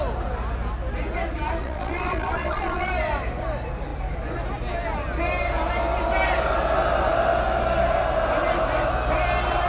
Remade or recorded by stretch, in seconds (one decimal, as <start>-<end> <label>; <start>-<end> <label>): 0.0-1.6 recorded; 1.6-2.9 remade; 2.9-9.7 recorded